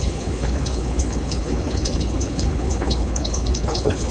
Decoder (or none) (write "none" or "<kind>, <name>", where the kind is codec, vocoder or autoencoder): codec, HILCodec